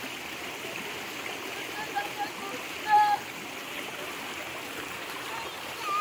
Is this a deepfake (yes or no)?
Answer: no